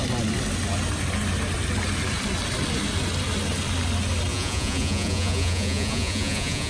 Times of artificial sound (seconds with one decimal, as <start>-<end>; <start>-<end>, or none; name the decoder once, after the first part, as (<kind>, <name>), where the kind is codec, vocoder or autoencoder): 4.3-6.7 (vocoder, Vocos)